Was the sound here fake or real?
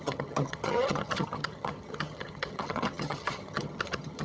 fake